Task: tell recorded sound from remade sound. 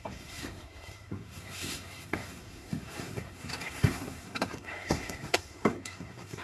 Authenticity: remade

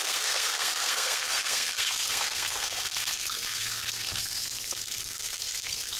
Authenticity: remade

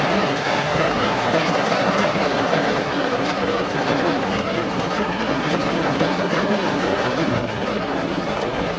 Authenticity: remade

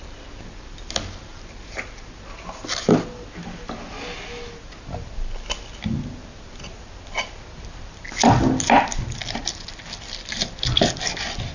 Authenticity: recorded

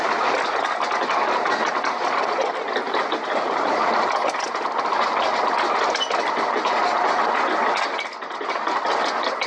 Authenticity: recorded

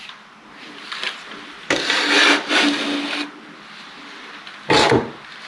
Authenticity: recorded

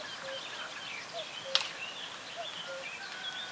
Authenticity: recorded